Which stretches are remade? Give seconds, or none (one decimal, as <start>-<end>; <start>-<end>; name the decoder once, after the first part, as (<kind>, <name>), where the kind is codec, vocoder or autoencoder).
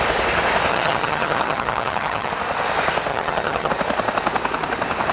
0.7-2.3 (vocoder, HiFi-GAN); 3.1-3.7